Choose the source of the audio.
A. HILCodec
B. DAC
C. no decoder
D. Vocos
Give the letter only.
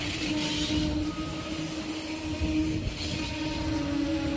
C